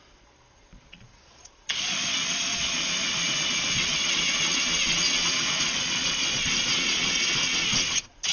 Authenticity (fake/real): fake